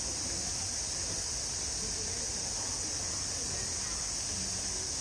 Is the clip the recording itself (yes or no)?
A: no